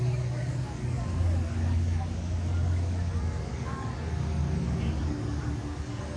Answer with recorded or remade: remade